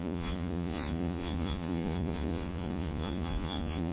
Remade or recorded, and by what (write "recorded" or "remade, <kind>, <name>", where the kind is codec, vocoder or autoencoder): remade, vocoder, Vocos